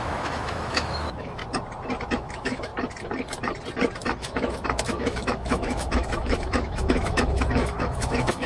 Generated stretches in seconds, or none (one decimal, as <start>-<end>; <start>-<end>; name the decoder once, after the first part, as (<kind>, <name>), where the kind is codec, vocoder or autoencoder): 0.0-1.4 (autoencoder, DAC-VAE); 2.1-2.7; 4.2-8.5